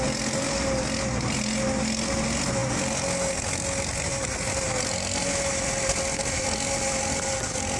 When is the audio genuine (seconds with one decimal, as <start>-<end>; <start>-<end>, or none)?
0.0-7.8